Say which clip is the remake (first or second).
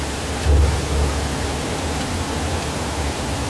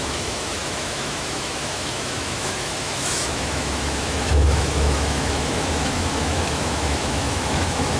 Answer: second